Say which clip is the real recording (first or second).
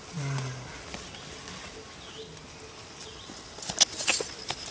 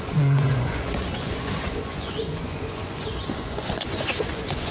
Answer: first